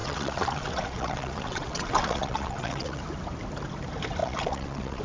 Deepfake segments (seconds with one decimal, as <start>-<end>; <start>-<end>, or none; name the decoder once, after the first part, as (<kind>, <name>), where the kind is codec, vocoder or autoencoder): 0.0-3.0 (vocoder, WaveNeXt); 4.2-5.0